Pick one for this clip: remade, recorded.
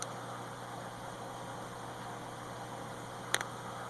recorded